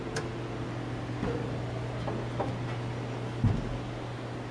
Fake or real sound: real